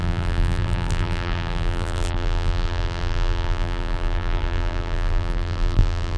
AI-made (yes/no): yes